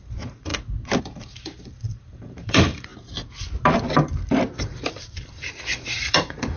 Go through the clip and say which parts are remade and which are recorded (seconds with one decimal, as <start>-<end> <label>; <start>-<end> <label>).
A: 0.0-0.5 remade; 0.5-1.0 recorded; 1.0-2.9 remade; 2.9-4.6 recorded; 4.6-6.6 remade